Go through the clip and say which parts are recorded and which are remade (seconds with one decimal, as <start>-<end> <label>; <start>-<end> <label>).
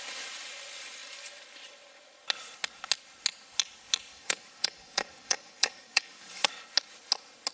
0.0-4.1 recorded; 4.1-6.5 remade; 6.5-7.5 recorded